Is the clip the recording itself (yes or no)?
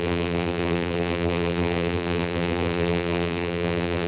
no